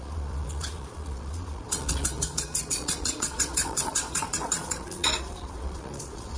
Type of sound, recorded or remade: remade